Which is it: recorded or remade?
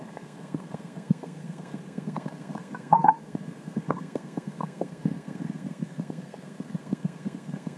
remade